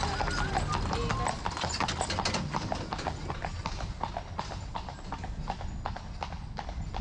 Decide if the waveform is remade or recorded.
recorded